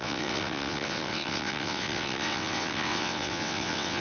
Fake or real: fake